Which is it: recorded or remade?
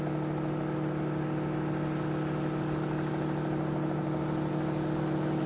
recorded